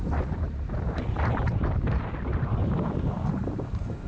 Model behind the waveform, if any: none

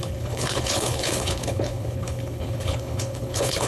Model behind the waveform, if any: codec, HILCodec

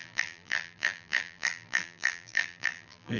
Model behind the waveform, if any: vocoder, BigVGAN v2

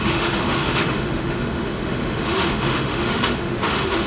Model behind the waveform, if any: autoencoder, DAC-VAE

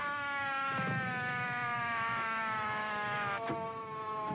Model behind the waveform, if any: autoencoder, DAC-VAE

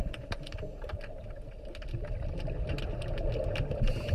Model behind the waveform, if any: none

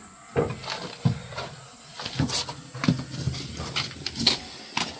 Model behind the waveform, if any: none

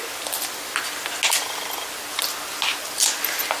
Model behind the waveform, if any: none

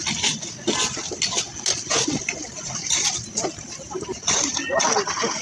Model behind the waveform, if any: none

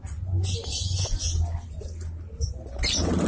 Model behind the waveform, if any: none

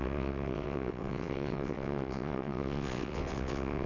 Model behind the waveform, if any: vocoder, WaveNeXt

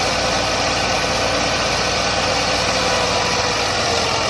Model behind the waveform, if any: none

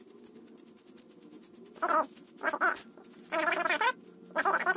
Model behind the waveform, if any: none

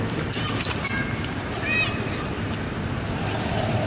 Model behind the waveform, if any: vocoder, BigVGAN v2